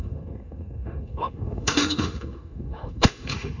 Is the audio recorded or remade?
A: remade